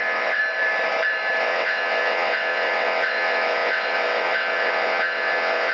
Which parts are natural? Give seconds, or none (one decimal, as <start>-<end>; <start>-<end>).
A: 0.4-1.4